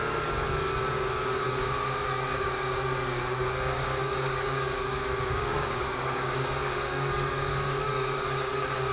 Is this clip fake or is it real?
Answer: fake